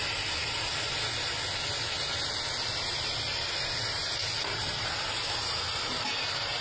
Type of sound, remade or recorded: recorded